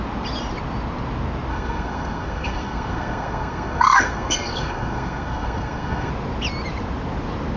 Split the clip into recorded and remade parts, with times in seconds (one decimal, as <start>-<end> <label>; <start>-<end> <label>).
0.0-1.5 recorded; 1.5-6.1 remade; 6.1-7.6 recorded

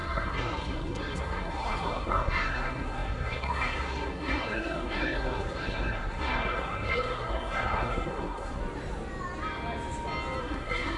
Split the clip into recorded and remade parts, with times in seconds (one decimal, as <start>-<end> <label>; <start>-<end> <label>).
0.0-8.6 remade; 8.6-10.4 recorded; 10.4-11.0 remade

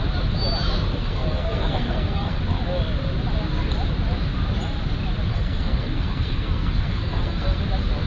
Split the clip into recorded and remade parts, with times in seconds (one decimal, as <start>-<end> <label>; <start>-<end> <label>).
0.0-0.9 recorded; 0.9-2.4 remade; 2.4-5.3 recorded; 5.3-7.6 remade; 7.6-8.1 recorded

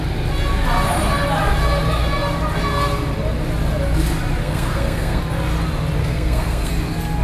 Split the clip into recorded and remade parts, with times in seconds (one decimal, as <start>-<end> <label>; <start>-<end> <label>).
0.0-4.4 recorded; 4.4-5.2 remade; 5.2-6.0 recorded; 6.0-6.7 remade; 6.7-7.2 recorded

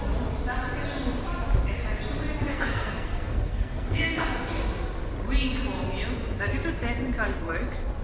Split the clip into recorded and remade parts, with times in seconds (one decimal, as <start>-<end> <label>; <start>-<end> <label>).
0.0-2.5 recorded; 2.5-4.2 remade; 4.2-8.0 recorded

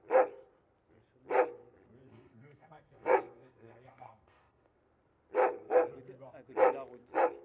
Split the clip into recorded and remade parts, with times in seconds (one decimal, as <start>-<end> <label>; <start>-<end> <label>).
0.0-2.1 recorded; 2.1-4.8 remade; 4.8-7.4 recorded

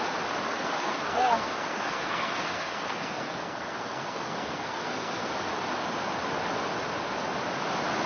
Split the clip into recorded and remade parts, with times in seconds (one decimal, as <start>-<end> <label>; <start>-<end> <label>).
0.0-0.4 recorded; 0.4-5.3 remade; 5.3-8.1 recorded